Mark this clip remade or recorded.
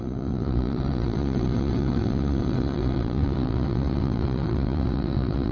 remade